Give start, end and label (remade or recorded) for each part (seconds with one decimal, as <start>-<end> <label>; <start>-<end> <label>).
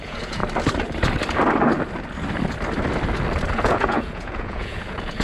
0.0-0.4 remade; 0.4-3.5 recorded; 3.5-5.2 remade